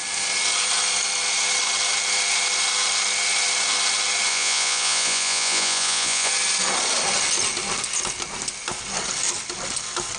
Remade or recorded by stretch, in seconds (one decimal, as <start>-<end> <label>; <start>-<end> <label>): 0.0-4.3 recorded; 4.3-6.3 remade; 6.3-10.2 recorded